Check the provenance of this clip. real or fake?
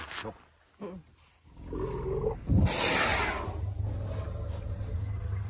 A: real